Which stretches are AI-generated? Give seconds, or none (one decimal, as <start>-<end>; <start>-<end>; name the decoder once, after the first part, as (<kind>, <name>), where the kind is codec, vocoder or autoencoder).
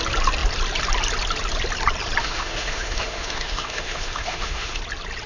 2.2-4.8 (autoencoder, DAC-VAE)